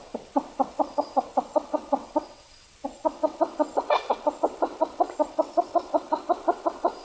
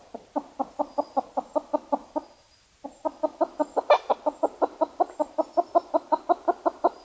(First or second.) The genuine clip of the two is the second